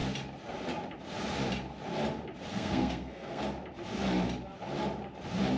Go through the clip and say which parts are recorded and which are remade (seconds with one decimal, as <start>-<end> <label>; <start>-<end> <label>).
0.0-2.5 recorded; 2.5-3.4 remade; 3.4-5.6 recorded